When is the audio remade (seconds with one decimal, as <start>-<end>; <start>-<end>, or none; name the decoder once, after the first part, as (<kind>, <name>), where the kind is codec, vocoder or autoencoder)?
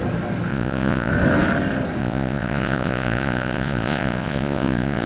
0.5-1.1 (vocoder, Vocos); 2.0-5.1